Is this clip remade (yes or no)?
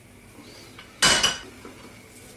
no